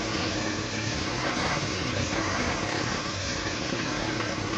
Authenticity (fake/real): fake